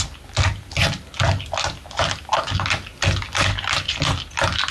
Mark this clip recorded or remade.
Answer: recorded